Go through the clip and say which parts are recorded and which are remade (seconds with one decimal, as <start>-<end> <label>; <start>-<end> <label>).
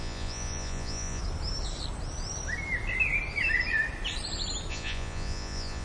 0.0-1.2 remade; 1.2-4.7 recorded; 4.7-5.8 remade